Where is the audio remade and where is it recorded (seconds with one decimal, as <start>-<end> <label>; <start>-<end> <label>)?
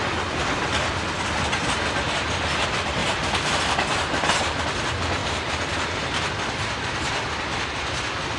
0.0-3.0 recorded; 3.0-4.6 remade; 4.6-5.2 recorded; 5.2-6.0 remade; 6.0-8.4 recorded